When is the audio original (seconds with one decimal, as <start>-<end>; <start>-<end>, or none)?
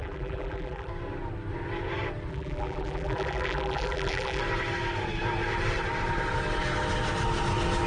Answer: 0.9-2.3; 4.4-7.9